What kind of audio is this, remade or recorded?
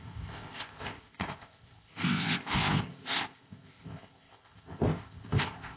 remade